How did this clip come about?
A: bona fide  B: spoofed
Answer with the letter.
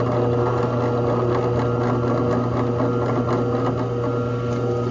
A